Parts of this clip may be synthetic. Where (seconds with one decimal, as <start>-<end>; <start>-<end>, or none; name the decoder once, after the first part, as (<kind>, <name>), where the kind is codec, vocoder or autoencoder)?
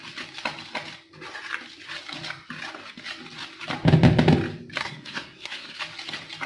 4.8-5.8 (codec, SNAC)